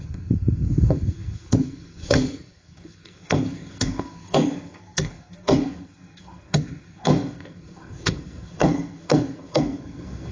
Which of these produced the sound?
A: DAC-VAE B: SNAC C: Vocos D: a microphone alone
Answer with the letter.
B